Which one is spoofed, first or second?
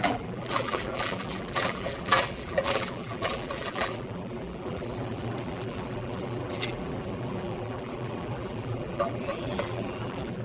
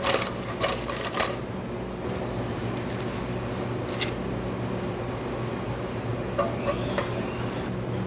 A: first